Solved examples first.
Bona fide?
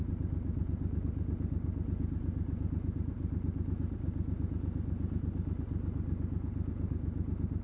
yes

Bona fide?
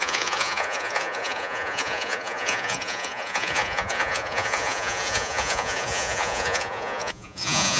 no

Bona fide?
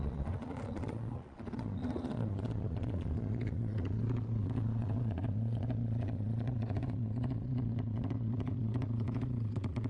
no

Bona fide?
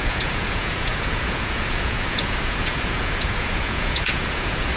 no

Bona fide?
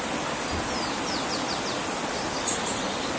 yes